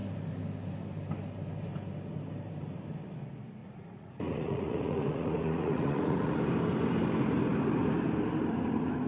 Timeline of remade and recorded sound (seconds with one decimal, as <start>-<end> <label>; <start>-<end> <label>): 0.0-3.6 recorded; 3.6-6.4 remade; 6.4-9.1 recorded

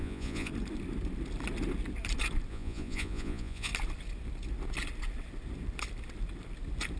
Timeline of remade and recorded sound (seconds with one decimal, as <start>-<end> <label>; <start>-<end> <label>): 0.0-0.5 remade; 0.5-2.5 recorded; 2.5-3.7 remade; 3.7-7.0 recorded